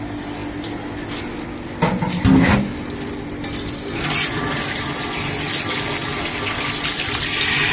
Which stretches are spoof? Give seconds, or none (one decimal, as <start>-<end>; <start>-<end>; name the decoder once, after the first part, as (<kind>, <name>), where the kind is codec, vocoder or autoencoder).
none